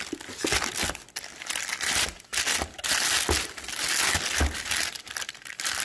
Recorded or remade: recorded